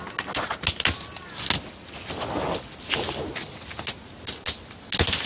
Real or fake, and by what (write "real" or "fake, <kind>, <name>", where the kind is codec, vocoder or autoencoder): real